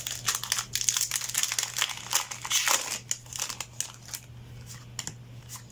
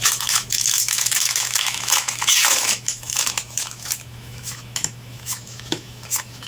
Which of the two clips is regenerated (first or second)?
second